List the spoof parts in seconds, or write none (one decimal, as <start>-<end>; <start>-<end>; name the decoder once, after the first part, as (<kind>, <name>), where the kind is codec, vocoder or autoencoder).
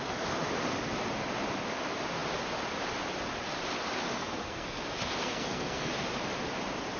4.1-4.8 (codec, SNAC); 5.2-5.9